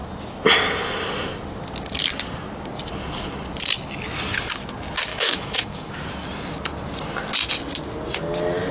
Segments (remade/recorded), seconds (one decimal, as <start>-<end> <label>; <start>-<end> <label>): 0.0-5.1 recorded; 5.1-5.9 remade; 5.9-8.7 recorded